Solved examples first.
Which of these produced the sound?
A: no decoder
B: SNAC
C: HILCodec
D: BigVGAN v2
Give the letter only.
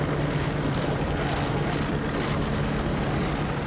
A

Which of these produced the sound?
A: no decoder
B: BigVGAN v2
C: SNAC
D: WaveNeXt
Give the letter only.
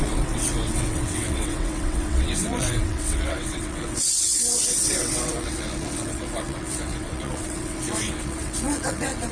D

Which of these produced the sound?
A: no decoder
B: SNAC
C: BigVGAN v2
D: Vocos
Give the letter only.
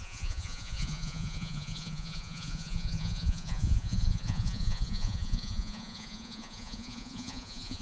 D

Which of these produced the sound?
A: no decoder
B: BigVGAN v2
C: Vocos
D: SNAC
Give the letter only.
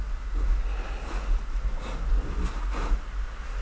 A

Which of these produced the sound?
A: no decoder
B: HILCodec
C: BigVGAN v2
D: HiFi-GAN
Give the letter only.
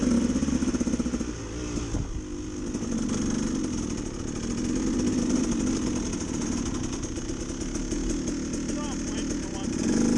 A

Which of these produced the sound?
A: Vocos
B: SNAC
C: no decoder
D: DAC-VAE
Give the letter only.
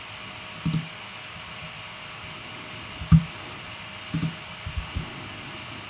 C